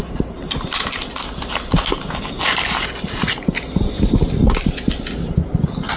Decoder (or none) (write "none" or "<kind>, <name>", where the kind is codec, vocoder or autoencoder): none